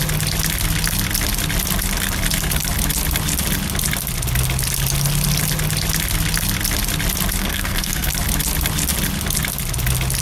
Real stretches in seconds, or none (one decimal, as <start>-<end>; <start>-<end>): 0.0-7.4; 8.1-10.2